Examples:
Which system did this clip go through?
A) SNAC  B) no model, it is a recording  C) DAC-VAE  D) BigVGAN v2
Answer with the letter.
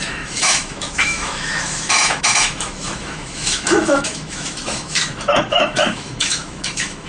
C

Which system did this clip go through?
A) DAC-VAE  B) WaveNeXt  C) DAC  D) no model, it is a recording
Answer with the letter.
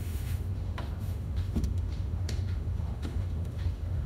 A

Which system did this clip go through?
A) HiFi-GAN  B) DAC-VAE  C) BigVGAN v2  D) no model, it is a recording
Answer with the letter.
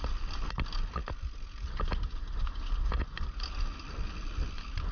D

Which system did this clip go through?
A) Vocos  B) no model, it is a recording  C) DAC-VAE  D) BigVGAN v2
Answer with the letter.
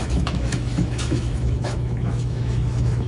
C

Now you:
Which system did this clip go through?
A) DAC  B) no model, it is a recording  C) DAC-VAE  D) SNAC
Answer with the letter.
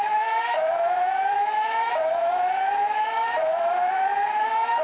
C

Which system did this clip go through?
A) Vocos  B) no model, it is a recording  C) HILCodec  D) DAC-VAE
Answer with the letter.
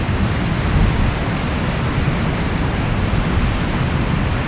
B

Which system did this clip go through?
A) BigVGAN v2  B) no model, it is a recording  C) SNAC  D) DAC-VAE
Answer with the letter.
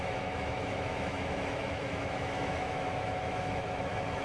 D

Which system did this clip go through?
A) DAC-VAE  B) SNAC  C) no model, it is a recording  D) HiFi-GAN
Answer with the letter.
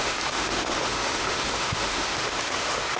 A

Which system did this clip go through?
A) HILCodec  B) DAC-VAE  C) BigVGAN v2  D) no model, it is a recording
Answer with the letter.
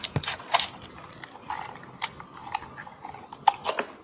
D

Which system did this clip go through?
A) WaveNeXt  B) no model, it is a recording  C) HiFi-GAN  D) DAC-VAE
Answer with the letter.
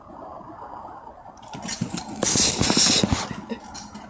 B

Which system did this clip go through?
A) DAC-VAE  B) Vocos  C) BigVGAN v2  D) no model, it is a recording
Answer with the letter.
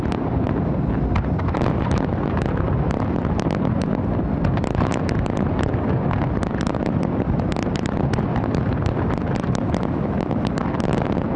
D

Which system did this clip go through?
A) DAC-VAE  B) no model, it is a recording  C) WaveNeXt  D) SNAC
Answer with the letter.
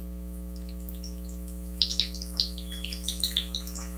A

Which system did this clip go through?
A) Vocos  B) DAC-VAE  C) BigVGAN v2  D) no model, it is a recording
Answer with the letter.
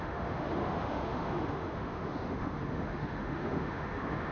B